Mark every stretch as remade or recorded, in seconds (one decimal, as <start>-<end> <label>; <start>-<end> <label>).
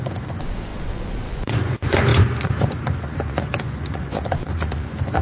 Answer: 0.0-5.2 remade